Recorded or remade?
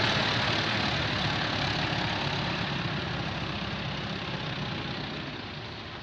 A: recorded